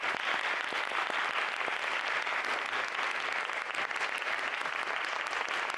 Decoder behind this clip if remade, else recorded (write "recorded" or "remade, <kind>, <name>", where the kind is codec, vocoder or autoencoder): recorded